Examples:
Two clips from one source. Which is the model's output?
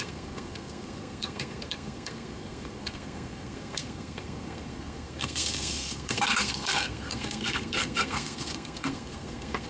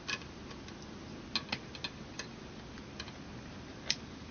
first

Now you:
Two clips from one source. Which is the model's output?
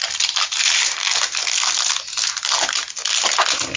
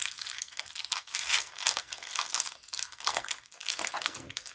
second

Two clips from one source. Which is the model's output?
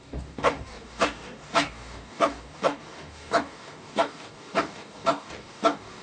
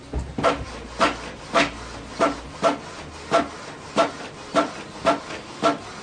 first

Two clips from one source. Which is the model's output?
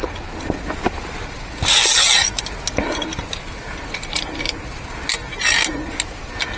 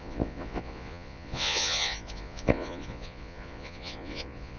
second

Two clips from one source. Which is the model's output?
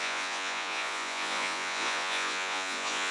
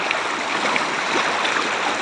first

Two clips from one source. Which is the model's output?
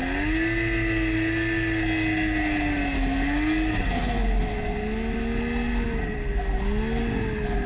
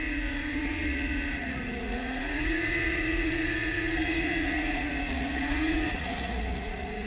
second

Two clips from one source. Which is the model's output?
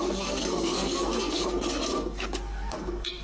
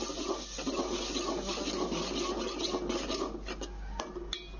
first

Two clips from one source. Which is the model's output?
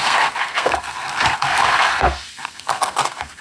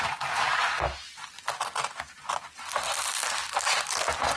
first